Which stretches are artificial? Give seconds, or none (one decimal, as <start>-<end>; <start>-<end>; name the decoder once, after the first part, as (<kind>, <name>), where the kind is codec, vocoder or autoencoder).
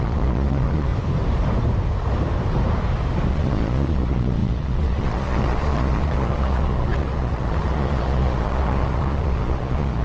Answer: 0.0-0.9 (vocoder, Vocos); 3.3-10.0